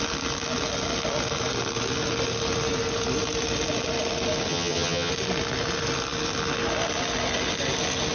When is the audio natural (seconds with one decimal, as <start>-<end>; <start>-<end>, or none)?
0.0-4.5; 5.1-8.1

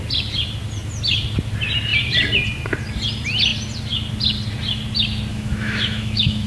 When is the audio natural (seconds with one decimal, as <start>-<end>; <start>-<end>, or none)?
0.0-5.3

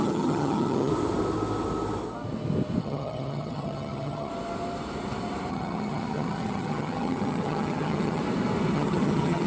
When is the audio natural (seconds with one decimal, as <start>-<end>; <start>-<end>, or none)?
0.9-2.8; 4.3-5.5; 8.2-8.7

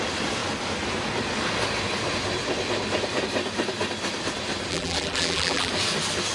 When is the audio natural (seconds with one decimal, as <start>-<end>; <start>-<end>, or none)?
0.0-4.7; 5.7-6.3

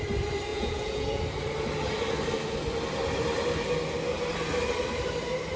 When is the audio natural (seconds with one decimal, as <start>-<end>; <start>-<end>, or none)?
0.0-0.5; 1.2-5.6

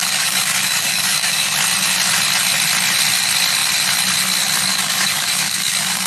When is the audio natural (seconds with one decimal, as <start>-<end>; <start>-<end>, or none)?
1.5-4.7